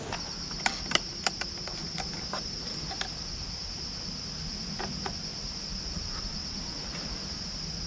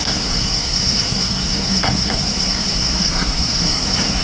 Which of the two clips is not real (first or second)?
second